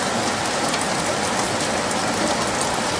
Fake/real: real